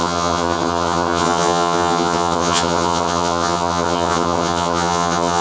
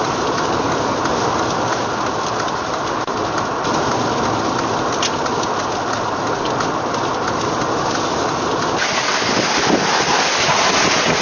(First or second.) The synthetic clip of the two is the first